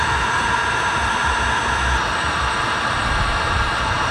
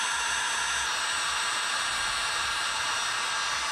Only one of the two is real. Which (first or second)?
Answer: second